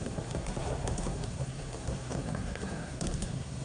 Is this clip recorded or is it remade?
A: remade